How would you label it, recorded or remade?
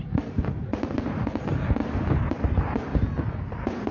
recorded